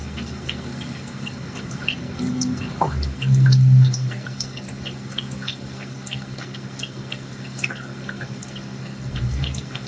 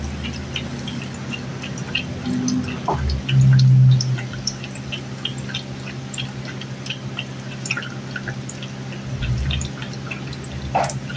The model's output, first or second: first